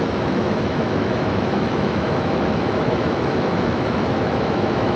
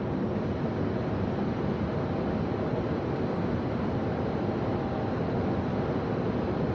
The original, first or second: second